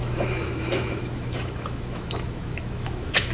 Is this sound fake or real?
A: fake